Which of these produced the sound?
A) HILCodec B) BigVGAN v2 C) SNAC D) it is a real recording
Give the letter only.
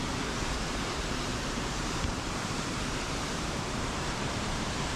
B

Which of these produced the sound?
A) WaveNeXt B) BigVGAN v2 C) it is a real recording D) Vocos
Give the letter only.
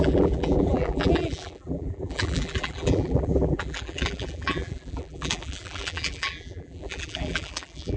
B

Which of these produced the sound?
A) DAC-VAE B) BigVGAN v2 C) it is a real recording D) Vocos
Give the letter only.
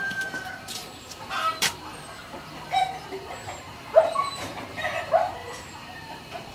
B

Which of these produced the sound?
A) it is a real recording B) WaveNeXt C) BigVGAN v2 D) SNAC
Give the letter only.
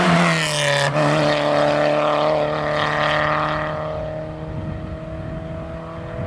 A